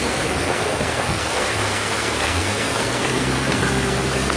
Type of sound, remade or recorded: remade